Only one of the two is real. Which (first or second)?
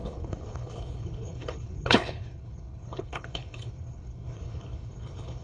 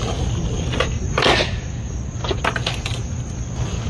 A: second